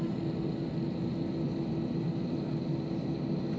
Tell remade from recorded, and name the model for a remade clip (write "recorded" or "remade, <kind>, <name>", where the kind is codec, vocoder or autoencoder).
recorded